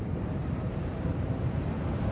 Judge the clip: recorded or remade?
remade